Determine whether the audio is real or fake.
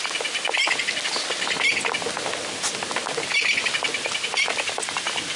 real